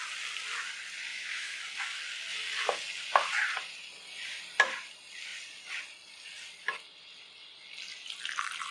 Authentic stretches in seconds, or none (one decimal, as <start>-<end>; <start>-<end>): 0.0-1.1; 1.6-8.7